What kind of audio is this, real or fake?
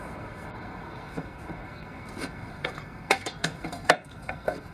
fake